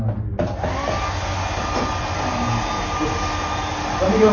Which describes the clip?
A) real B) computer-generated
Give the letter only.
A